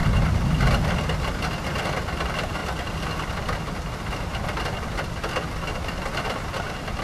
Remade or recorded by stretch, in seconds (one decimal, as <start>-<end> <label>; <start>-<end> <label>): 0.0-7.0 recorded